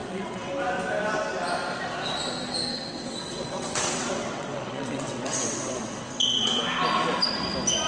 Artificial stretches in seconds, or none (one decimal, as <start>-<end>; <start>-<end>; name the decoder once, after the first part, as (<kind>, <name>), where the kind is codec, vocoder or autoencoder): 0.0-0.5 (vocoder, WaveNeXt); 2.7-6.6